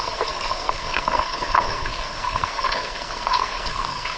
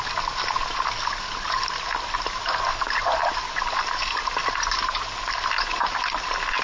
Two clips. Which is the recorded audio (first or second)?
second